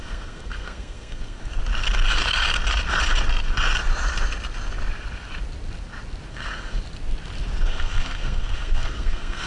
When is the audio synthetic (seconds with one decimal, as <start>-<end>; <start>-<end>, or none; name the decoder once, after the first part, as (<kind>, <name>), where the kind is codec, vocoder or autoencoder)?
0.0-1.6 (codec, SNAC); 6.3-6.8; 7.6-9.5